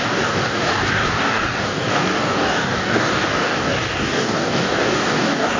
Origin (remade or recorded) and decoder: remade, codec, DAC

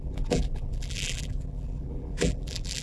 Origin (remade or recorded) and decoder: remade, vocoder, BigVGAN v2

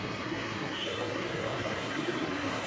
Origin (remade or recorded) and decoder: remade, codec, SNAC